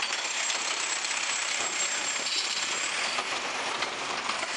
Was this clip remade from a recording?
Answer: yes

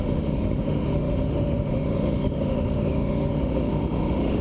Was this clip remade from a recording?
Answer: yes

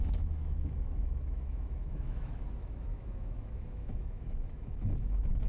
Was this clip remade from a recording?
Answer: yes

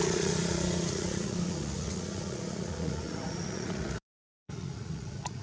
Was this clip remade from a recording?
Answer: yes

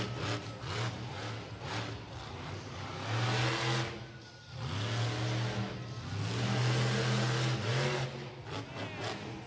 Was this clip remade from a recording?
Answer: no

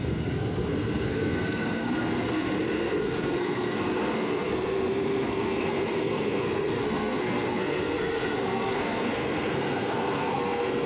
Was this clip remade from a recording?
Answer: yes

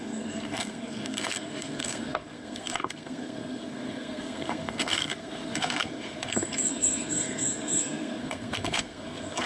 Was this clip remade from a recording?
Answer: yes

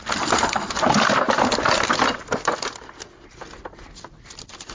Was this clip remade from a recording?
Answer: no